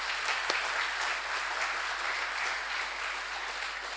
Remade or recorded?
recorded